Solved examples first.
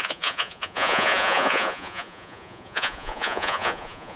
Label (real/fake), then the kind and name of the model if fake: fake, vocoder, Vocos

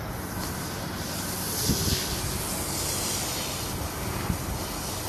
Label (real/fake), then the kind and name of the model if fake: real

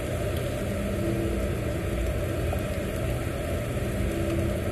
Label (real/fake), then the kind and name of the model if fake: real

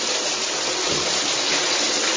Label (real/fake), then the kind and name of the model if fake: real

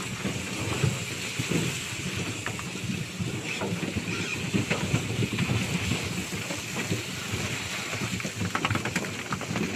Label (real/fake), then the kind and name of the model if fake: real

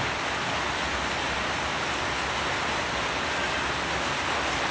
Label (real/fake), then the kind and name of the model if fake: real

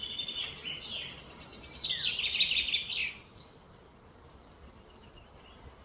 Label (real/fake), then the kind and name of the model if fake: real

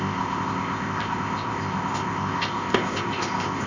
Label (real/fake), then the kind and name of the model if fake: fake, codec, ZipCodec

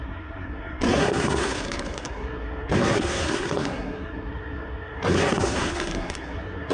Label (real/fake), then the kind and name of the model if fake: fake, codec, SNAC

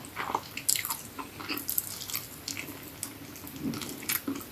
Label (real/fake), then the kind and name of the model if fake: real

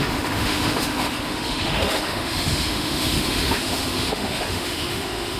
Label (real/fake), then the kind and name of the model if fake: fake, autoencoder, DAC-VAE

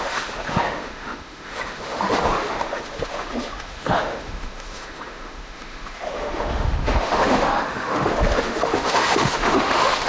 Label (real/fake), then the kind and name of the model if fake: fake, autoencoder, DAC-VAE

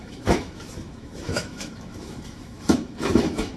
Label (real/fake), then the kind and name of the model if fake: fake, autoencoder, DAC-VAE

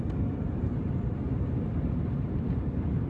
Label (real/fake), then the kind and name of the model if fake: fake, vocoder, BigVGAN v2